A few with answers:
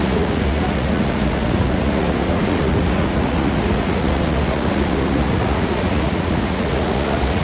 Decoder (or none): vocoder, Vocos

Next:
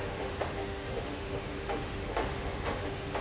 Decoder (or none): autoencoder, DAC-VAE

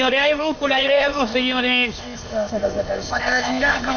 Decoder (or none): codec, ZipCodec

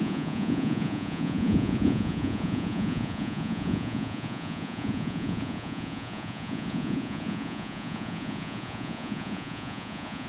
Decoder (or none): vocoder, Vocos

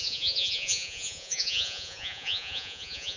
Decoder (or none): vocoder, Vocos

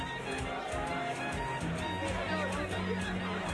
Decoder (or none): none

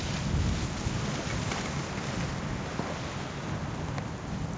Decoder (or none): none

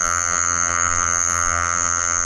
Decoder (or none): vocoder, BigVGAN v2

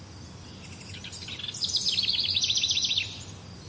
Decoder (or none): none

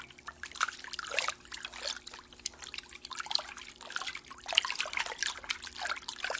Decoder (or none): none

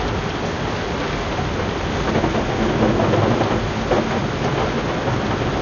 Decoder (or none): none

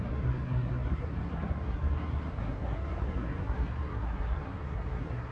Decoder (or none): codec, SNAC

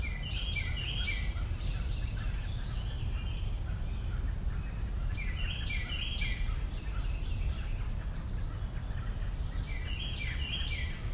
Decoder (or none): none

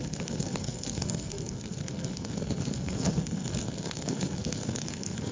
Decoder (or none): codec, SNAC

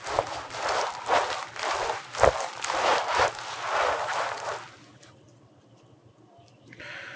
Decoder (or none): none